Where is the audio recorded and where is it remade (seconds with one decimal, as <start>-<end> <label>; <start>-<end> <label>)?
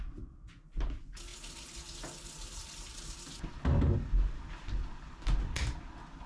0.0-6.3 recorded